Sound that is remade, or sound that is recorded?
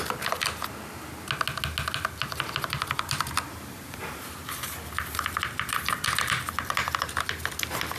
recorded